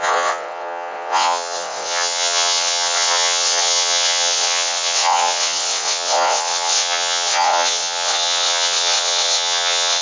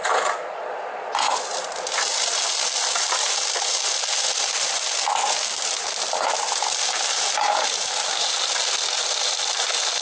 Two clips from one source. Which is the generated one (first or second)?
first